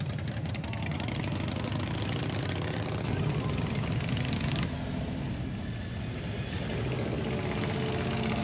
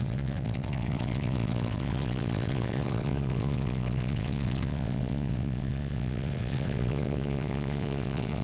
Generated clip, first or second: second